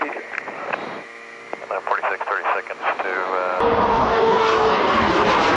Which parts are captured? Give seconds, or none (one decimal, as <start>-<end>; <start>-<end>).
0.0-3.9; 5.1-5.6